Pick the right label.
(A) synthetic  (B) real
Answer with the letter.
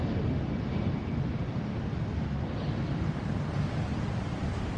B